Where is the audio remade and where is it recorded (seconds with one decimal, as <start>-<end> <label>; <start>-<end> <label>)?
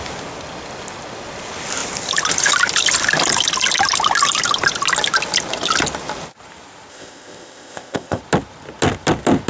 0.0-6.9 recorded; 6.9-8.2 remade; 8.2-9.5 recorded